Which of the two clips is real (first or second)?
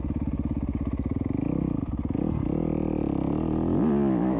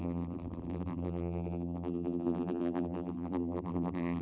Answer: first